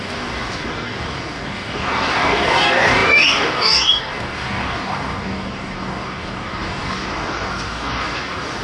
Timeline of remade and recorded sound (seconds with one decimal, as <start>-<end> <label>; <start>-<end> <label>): 0.0-8.6 remade